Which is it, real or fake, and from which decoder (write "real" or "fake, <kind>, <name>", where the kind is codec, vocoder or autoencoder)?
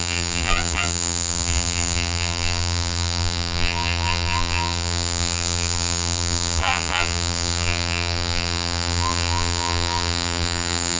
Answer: fake, vocoder, BigVGAN v2